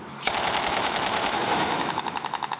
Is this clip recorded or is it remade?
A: remade